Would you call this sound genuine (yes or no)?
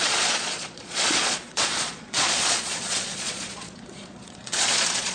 no